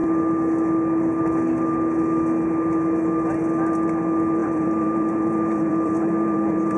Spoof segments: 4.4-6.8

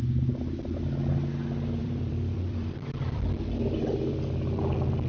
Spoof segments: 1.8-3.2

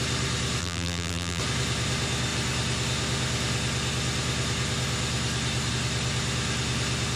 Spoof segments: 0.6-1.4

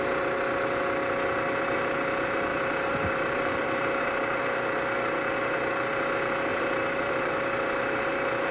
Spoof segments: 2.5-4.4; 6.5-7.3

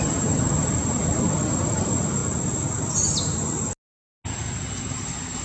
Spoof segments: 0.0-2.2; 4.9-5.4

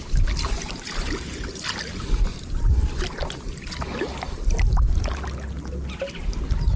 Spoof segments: 2.3-3.8

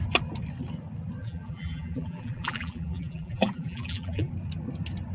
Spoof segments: 1.2-4.3